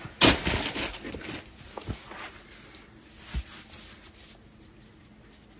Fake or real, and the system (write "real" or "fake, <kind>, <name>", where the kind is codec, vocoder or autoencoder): real